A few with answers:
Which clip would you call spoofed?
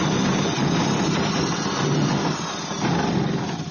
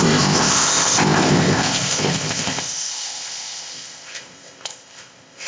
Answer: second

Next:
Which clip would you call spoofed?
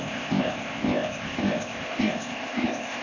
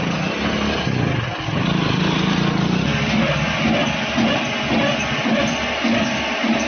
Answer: first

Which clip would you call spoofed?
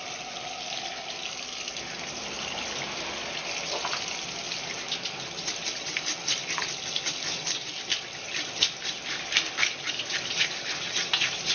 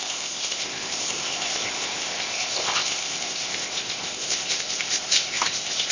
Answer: second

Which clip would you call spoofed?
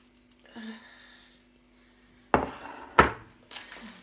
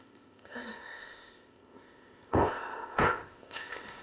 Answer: second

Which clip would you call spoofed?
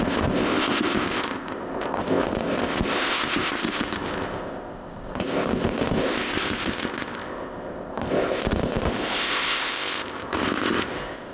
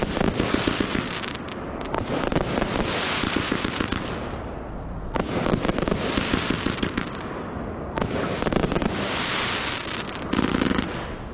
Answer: first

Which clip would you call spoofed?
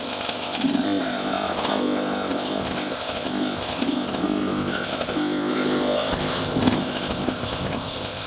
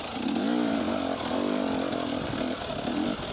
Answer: first